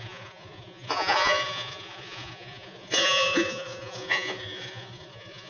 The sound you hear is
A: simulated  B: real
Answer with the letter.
A